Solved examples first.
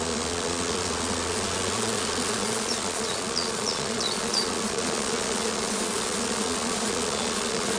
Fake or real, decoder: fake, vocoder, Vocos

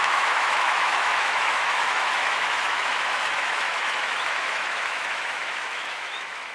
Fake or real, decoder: fake, autoencoder, DAC-VAE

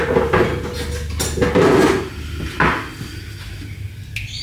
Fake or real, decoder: real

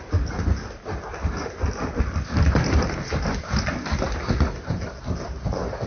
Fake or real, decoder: real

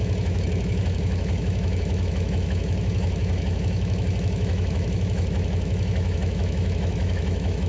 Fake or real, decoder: fake, autoencoder, DAC-VAE